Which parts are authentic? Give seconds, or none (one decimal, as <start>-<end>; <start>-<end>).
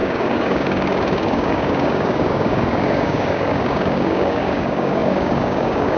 none